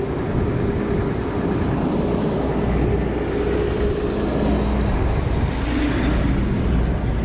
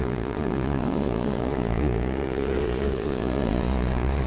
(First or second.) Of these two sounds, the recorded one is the first